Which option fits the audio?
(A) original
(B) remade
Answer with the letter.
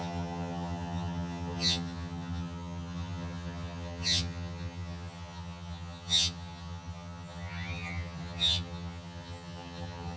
B